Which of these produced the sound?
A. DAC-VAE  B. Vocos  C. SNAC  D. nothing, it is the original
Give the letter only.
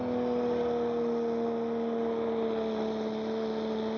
D